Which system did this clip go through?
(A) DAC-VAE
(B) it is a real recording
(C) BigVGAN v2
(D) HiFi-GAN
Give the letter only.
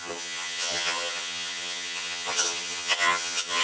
D